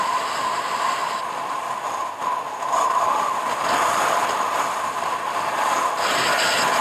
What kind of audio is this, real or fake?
real